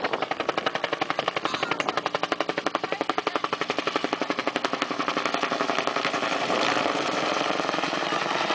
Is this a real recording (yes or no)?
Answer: yes